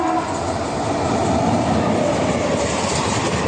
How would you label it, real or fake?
real